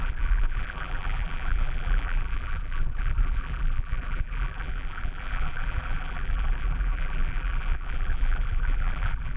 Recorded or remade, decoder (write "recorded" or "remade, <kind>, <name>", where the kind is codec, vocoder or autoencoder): remade, vocoder, BigVGAN v2